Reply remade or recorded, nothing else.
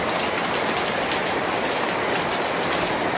recorded